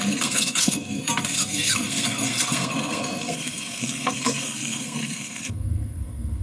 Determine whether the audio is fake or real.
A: fake